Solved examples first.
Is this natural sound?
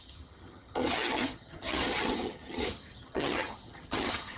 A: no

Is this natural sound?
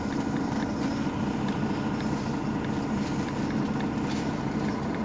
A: yes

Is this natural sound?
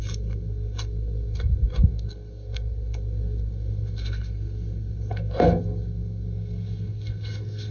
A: no